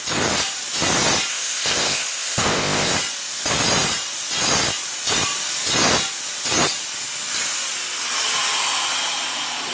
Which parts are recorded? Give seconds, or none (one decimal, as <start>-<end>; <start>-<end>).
0.0-1.3; 2.9-9.7